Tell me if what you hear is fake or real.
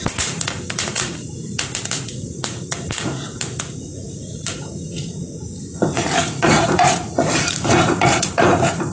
fake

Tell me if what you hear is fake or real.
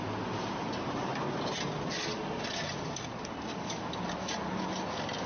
real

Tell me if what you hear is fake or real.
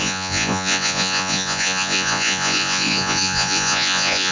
fake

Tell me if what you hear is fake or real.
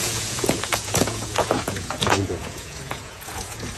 fake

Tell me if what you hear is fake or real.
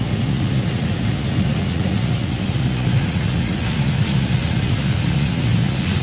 fake